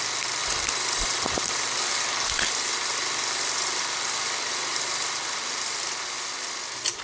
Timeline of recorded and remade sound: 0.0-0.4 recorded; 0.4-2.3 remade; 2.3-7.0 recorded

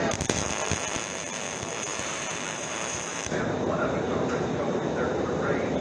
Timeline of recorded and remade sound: 0.0-1.9 recorded; 1.9-5.8 remade

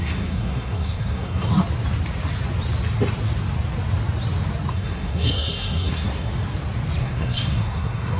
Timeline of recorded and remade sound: 0.0-1.5 remade; 1.5-4.7 recorded; 4.7-6.3 remade; 6.3-7.0 recorded; 7.0-8.2 remade

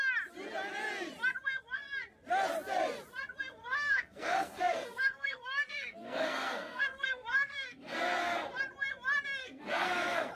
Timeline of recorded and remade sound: 0.0-3.6 recorded; 3.6-8.5 remade; 8.5-9.4 recorded; 9.4-10.3 remade

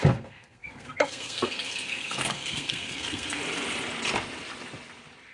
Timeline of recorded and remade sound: 0.0-3.4 remade; 3.4-5.3 recorded

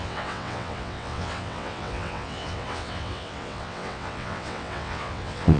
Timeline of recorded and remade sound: 0.0-5.6 remade

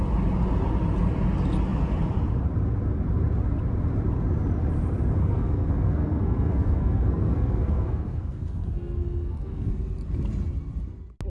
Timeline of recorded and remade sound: 0.0-5.2 recorded; 5.2-9.7 remade; 9.7-11.3 recorded